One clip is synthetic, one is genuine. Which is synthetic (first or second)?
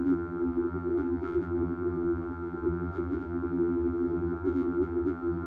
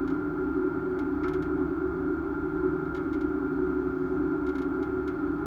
first